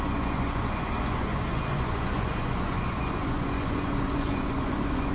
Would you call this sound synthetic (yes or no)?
yes